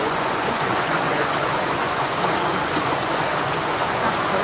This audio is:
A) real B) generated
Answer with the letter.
B